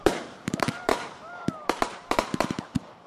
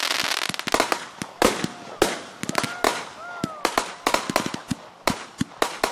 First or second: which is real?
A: second